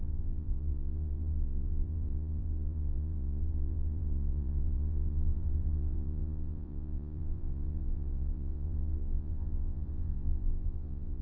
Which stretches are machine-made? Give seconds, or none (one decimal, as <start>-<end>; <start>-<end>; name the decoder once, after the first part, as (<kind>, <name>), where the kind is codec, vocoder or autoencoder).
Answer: 0.0-11.2 (vocoder, Vocos)